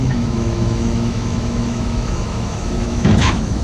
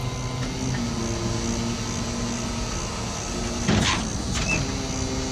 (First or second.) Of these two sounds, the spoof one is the first